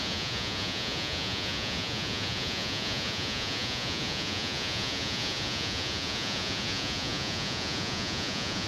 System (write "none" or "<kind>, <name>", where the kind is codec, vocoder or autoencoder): vocoder, Vocos